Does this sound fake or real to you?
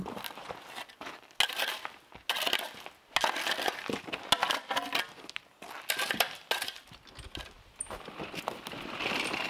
real